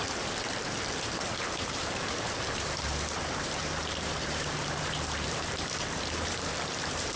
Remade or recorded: remade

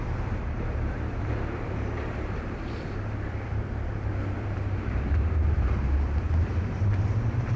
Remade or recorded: remade